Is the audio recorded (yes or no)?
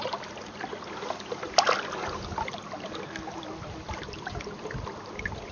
yes